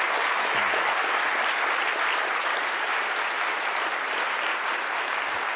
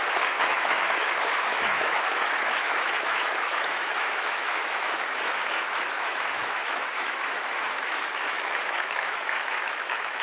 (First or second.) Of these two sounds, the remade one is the second